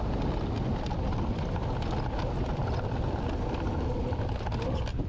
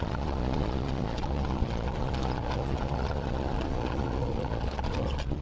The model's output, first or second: second